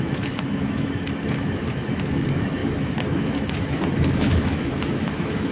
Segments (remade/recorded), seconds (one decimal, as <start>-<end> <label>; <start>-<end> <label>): 0.0-5.5 remade